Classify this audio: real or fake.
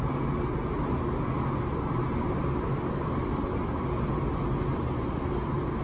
real